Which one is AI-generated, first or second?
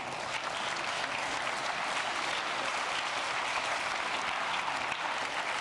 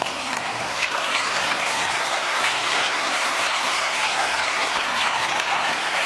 second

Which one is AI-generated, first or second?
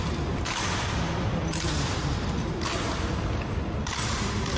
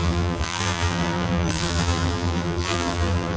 second